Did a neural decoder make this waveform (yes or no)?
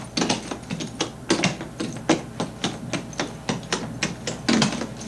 no